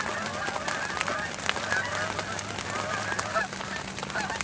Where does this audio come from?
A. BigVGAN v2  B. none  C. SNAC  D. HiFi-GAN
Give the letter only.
B